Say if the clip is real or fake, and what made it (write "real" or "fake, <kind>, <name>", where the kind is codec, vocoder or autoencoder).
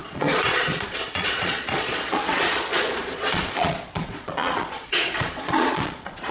fake, vocoder, Vocos